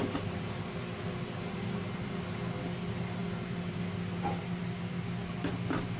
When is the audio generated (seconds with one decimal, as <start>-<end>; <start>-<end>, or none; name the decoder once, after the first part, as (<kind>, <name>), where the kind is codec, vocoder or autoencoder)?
none